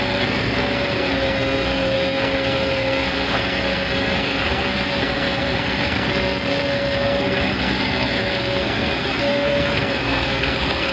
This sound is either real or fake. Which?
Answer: fake